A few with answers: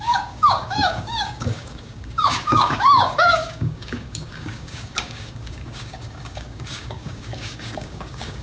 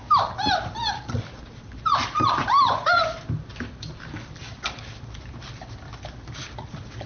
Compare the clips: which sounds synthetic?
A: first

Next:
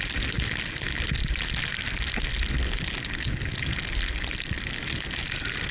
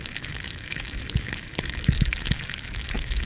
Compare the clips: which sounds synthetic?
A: second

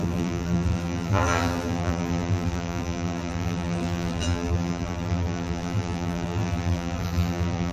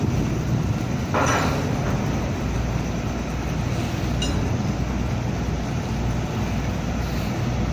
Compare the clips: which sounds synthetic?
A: first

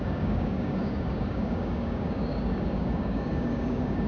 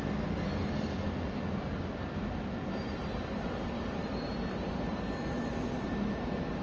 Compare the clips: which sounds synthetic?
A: first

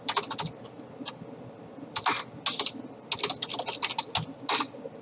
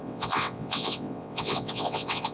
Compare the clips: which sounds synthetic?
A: second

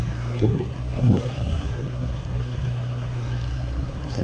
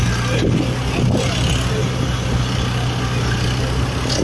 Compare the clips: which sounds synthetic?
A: first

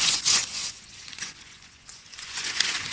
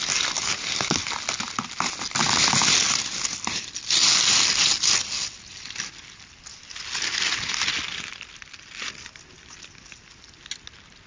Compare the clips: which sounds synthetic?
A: first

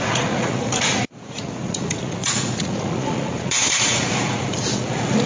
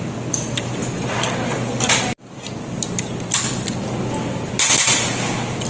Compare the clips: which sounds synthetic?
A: first